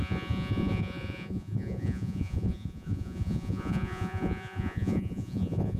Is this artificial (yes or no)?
yes